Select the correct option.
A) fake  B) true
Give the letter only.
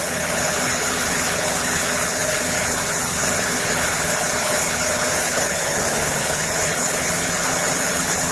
A